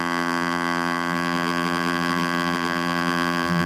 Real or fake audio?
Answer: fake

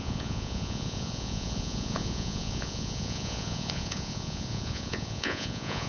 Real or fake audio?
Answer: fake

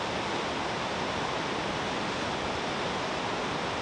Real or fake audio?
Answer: real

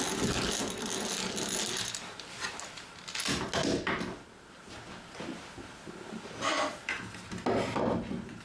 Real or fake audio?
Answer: real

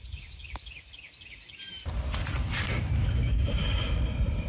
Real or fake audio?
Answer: fake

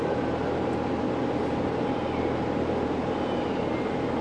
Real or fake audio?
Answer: real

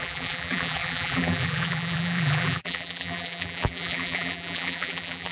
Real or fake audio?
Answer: fake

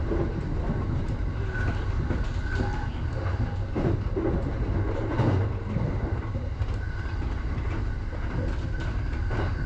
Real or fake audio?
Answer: real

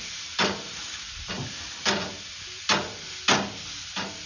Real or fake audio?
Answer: real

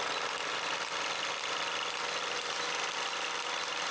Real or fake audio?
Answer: real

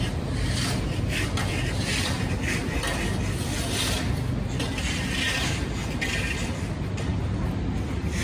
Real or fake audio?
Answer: real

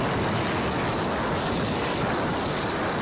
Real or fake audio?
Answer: real